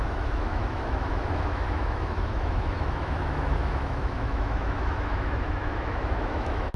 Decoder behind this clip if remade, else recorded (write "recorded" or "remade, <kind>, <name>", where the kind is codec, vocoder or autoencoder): remade, autoencoder, DAC-VAE